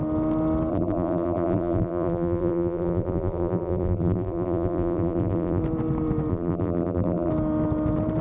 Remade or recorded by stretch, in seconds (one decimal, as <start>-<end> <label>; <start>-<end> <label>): 0.0-0.7 recorded; 0.7-5.6 remade; 5.6-6.3 recorded; 6.3-7.3 remade; 7.3-8.2 recorded